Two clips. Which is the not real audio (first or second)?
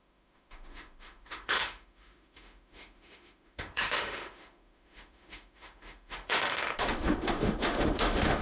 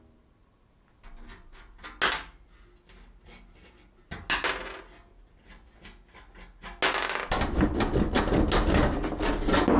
first